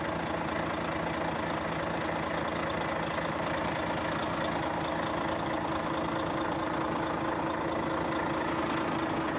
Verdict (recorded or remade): recorded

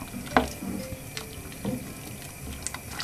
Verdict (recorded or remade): recorded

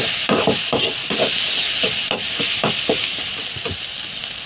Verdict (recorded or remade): recorded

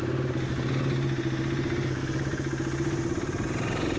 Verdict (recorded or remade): recorded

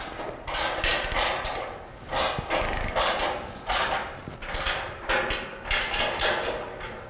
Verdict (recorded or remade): recorded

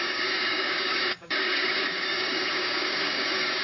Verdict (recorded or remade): remade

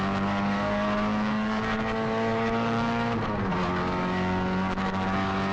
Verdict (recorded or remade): remade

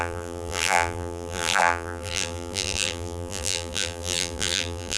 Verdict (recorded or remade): remade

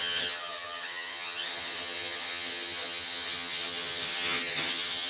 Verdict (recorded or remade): remade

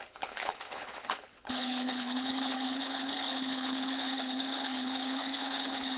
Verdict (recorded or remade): remade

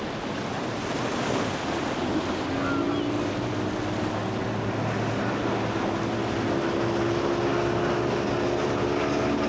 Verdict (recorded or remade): recorded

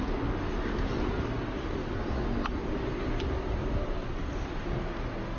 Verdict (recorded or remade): recorded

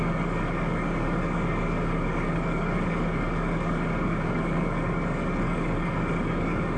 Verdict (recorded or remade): remade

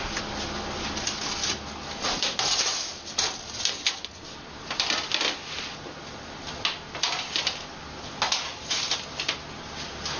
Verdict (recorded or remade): recorded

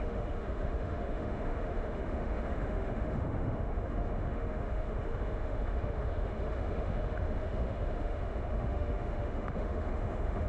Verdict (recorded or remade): remade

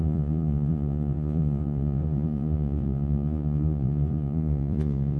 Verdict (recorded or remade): remade